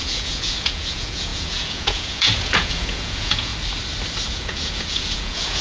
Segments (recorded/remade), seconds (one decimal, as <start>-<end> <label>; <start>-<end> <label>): 0.0-3.5 remade; 3.5-4.3 recorded; 4.3-5.6 remade